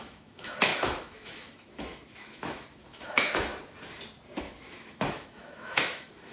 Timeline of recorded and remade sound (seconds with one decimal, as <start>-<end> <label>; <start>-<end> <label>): 0.0-3.5 remade; 3.5-4.4 recorded; 4.4-6.3 remade